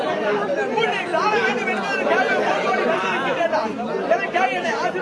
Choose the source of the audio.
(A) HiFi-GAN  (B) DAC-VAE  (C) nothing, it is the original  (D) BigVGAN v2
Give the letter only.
C